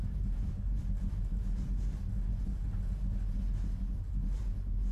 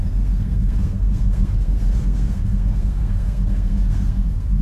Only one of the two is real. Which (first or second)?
first